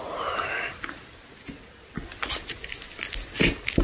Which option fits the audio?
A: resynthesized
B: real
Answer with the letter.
B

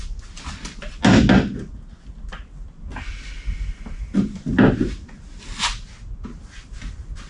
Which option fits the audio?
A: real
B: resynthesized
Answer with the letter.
A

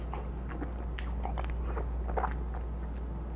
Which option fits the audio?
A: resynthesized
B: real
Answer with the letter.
B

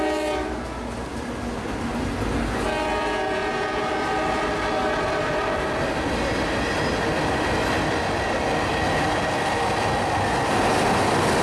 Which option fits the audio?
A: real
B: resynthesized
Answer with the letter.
A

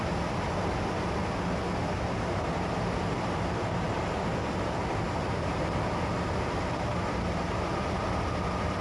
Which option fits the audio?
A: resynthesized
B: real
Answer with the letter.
B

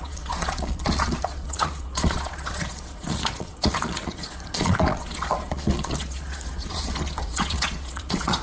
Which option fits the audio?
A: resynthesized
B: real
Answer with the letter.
A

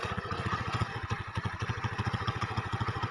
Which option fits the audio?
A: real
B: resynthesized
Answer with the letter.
B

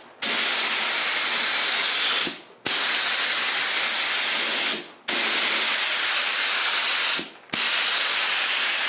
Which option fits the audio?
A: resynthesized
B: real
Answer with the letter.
B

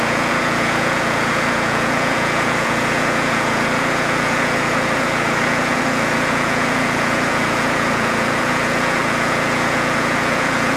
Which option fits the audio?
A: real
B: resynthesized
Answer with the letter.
B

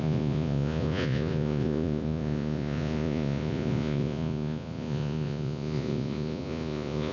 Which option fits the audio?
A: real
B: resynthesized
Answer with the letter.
B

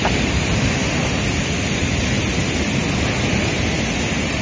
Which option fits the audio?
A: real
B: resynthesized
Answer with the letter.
A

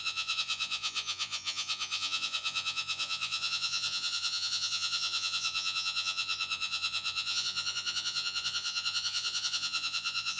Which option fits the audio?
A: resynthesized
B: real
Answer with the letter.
A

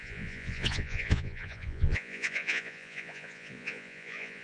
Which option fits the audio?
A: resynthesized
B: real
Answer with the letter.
A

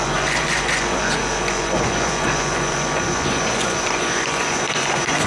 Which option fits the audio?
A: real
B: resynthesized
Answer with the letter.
B